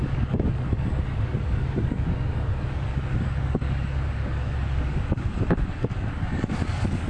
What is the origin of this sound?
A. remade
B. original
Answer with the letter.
A